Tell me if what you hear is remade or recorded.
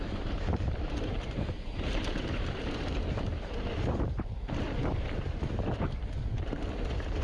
remade